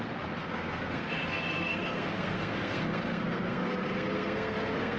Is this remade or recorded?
remade